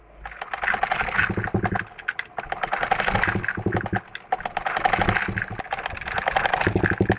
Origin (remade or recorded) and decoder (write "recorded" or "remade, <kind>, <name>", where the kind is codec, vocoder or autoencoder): recorded